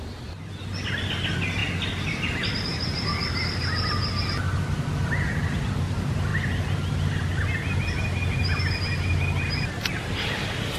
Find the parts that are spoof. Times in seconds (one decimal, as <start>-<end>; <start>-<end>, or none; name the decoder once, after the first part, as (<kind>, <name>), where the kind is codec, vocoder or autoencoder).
none